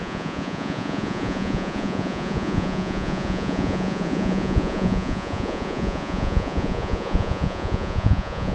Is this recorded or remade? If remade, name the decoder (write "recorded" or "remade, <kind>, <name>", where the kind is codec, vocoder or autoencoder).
remade, vocoder, Vocos